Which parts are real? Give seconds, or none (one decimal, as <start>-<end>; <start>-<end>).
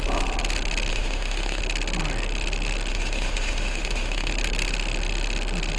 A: 0.0-0.9; 1.6-2.9; 4.3-5.8